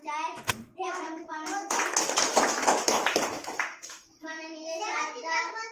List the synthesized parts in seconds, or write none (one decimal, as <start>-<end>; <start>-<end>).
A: 0.0-5.7